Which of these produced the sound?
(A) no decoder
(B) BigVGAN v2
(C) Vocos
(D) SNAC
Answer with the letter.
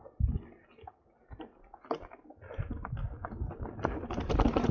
A